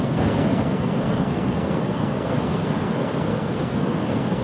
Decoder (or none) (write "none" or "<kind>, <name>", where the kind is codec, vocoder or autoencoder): codec, SNAC